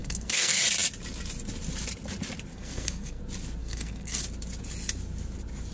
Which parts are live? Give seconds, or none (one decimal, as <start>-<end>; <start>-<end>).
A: 0.6-2.5; 3.2-3.6; 4.2-5.7